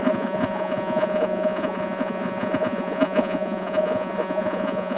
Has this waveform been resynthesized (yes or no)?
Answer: yes